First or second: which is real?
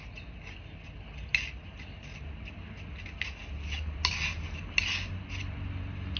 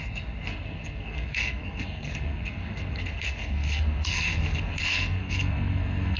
first